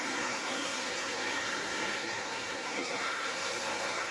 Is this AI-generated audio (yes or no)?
yes